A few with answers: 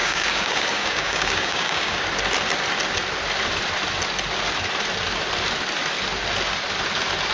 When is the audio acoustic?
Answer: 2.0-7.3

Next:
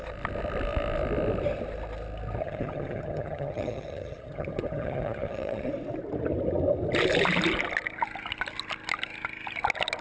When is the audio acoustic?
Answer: 0.0-2.4; 5.7-10.0